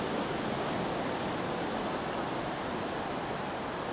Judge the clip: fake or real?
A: real